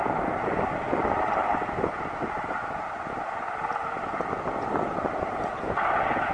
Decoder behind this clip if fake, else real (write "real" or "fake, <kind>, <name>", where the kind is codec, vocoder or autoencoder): real